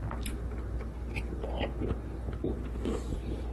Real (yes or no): yes